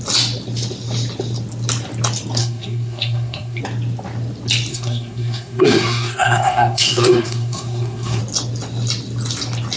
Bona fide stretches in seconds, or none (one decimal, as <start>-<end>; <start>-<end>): 0.0-2.4; 3.6-4.7; 8.2-9.8